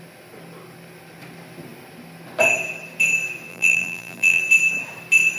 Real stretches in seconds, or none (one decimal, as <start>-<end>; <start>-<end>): 0.0-3.5; 4.4-5.4